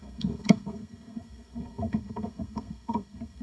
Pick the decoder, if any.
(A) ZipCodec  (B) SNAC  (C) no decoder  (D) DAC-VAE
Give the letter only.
B